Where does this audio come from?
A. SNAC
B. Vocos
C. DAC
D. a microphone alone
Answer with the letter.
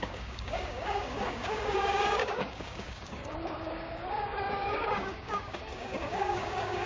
C